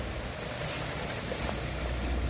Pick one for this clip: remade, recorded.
recorded